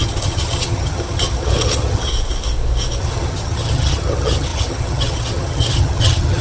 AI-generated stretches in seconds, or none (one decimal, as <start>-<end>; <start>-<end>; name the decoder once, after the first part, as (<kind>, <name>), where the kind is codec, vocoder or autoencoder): 0.0-2.1 (vocoder, HiFi-GAN); 3.0-6.4